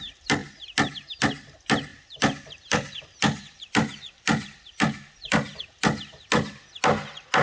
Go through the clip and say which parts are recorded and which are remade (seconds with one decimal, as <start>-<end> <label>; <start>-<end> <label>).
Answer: 0.0-1.9 recorded; 1.9-6.3 remade; 6.3-7.4 recorded